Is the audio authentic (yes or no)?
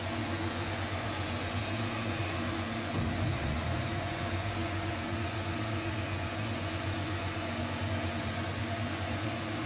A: no